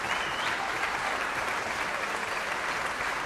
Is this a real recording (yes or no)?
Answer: yes